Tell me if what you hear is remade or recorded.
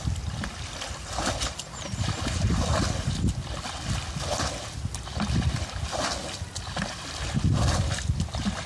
recorded